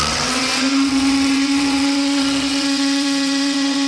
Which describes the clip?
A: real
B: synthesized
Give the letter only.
B